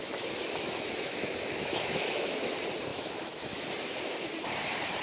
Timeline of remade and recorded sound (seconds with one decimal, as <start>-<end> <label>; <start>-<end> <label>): 0.0-2.5 remade; 2.5-2.9 recorded; 2.9-3.7 remade; 3.7-5.0 recorded